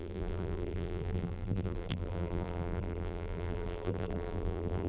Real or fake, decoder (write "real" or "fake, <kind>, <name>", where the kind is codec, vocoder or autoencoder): fake, vocoder, BigVGAN v2